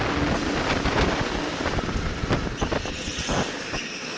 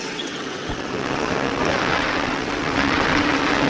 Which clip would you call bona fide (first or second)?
first